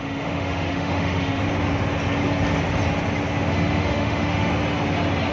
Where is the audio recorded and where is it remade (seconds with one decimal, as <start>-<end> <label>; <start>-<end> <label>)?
0.0-1.4 remade; 1.4-3.5 recorded; 3.5-4.5 remade; 4.5-5.3 recorded